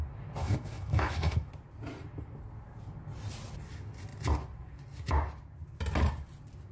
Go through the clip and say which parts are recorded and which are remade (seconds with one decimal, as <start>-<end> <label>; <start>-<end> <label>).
0.0-0.4 recorded; 0.4-1.5 remade; 1.5-6.7 recorded